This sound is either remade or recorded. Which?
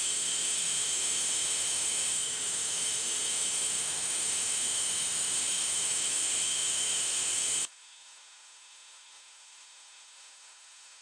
remade